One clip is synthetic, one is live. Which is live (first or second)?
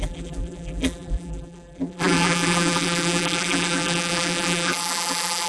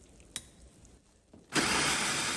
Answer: second